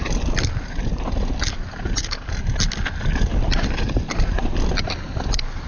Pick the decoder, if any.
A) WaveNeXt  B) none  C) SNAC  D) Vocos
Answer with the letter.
B